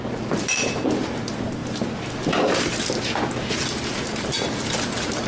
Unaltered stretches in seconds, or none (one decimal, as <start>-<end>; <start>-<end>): 0.0-5.3